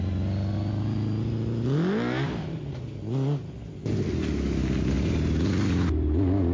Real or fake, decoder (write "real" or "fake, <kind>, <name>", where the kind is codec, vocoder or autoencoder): real